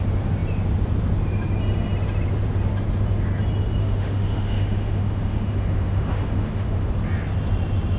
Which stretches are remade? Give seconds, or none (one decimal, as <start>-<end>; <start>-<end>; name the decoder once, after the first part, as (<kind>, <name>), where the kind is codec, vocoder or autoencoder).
3.8-6.9 (autoencoder, DAC-VAE)